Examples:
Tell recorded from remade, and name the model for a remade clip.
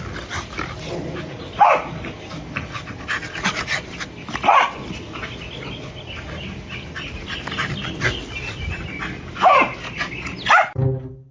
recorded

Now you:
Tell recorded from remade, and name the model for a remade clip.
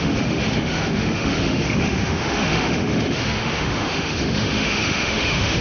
remade, autoencoder, DAC-VAE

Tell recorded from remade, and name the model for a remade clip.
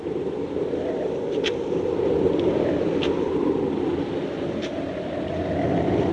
recorded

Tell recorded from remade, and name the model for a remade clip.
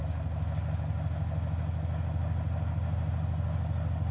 recorded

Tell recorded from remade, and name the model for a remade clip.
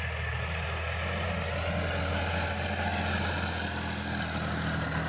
recorded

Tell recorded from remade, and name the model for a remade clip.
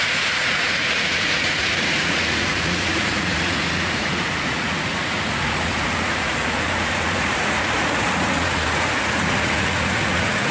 remade, vocoder, Vocos